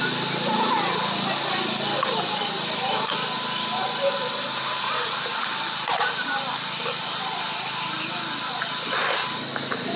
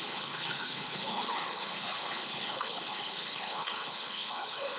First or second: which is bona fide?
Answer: first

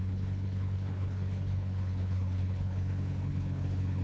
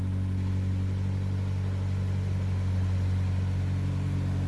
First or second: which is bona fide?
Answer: second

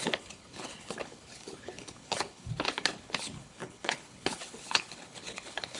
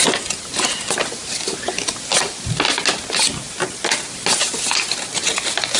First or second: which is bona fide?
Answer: second